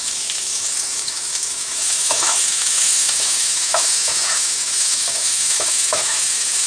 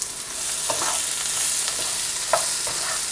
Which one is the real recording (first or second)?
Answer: second